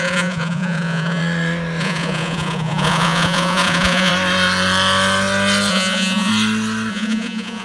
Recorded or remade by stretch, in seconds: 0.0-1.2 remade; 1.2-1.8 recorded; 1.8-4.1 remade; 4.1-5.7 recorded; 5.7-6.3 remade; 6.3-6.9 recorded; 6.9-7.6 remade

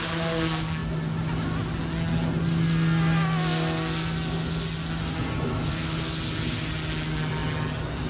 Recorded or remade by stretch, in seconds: 0.0-8.1 recorded

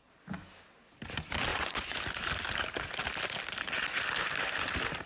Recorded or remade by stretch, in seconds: 0.0-1.5 recorded; 1.5-2.0 remade; 2.0-5.1 recorded

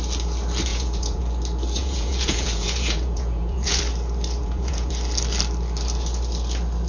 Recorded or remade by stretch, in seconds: 0.0-0.7 recorded; 0.7-1.2 remade; 1.2-1.8 recorded; 1.8-3.8 remade; 3.8-4.4 recorded; 4.4-4.9 remade; 4.9-6.9 recorded